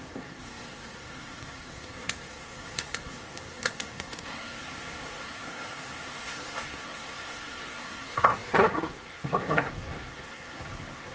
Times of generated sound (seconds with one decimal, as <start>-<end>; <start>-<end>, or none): 0.0-11.1